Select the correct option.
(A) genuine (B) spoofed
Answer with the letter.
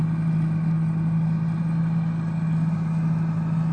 A